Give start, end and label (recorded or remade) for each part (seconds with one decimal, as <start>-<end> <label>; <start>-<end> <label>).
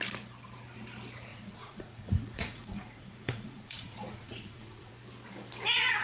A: 0.0-1.3 recorded; 1.3-4.9 remade; 4.9-6.0 recorded